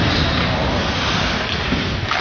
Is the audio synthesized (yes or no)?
no